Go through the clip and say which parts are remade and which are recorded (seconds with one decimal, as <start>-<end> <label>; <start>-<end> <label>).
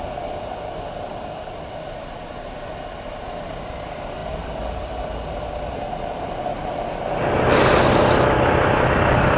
0.0-9.4 recorded